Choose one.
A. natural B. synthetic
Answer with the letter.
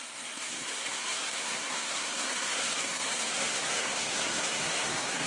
B